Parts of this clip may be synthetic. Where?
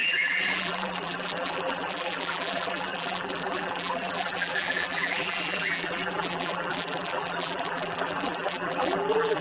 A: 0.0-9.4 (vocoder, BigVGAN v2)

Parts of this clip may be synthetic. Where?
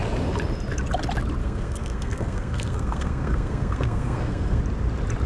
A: 1.4-4.6 (codec, SNAC)